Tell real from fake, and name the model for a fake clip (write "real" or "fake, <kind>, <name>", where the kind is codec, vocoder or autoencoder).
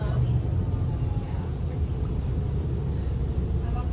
real